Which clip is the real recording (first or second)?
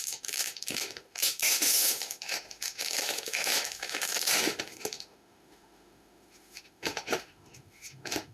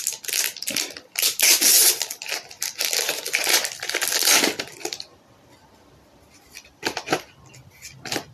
second